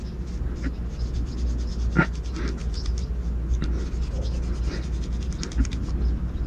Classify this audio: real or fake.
real